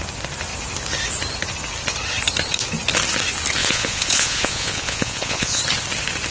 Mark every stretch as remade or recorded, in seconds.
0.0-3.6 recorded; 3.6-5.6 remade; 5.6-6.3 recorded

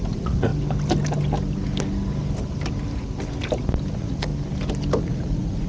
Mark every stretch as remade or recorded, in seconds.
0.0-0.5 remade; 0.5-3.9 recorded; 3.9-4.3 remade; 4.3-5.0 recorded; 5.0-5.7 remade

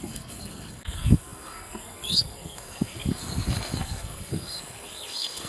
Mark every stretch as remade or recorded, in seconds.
0.0-5.5 remade

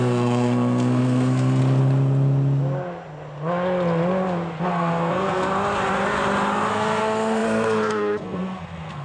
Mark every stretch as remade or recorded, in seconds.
0.0-1.6 remade; 1.6-4.6 recorded; 4.6-5.5 remade; 5.5-6.7 recorded; 6.7-9.0 remade

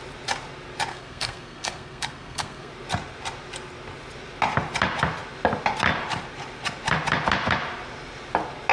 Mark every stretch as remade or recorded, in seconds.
0.0-0.9 recorded; 0.9-2.7 remade; 2.7-8.7 recorded

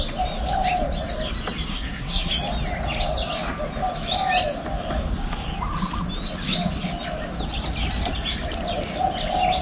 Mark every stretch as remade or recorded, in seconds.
0.0-1.7 recorded; 1.7-2.3 remade; 2.3-9.6 recorded